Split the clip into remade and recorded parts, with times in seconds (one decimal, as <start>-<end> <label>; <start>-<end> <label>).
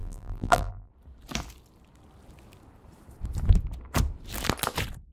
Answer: 0.0-0.9 remade; 0.9-5.1 recorded